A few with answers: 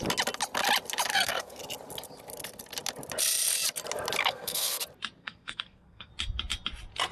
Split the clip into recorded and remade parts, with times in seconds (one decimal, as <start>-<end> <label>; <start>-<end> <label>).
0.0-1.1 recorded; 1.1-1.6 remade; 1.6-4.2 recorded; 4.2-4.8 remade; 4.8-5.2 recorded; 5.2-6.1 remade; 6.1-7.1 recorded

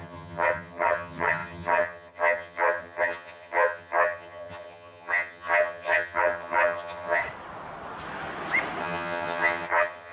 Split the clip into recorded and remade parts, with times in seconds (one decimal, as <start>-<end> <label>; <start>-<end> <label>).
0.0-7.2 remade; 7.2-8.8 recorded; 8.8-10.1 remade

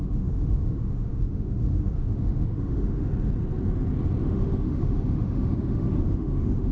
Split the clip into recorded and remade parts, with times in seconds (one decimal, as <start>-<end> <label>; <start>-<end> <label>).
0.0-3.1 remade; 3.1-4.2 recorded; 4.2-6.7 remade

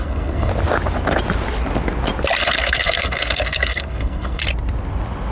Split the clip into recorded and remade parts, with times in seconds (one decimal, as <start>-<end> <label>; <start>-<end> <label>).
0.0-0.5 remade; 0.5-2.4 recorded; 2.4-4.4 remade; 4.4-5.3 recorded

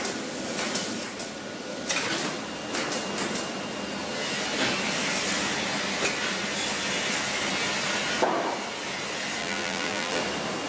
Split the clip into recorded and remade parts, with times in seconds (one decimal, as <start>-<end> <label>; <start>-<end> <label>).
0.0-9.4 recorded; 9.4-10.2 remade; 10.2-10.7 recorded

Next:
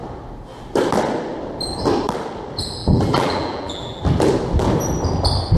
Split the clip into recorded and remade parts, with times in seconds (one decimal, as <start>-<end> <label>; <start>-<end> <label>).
0.0-2.8 recorded; 2.8-4.0 remade; 4.0-5.6 recorded